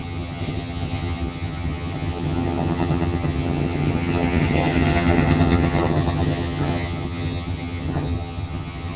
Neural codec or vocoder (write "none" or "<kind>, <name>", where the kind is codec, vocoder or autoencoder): vocoder, HiFi-GAN